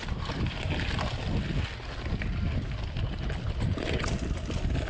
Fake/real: real